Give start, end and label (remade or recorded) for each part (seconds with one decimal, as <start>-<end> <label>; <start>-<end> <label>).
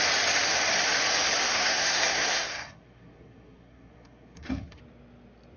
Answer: 0.0-1.4 recorded; 1.4-4.8 remade; 4.8-5.6 recorded